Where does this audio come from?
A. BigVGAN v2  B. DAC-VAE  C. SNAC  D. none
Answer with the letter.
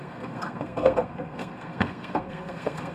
C